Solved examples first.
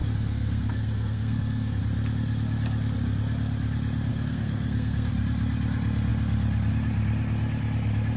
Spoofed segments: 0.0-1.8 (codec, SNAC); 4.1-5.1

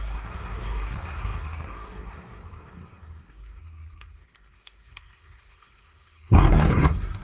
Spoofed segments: 0.0-7.2 (codec, SNAC)

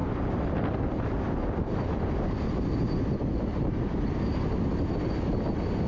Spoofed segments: none

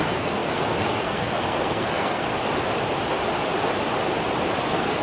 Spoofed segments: 0.0-2.3 (codec, SNAC); 4.6-5.0